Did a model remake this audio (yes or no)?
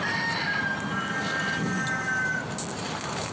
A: no